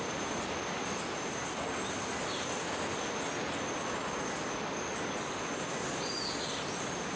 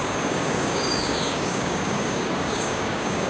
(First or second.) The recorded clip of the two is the first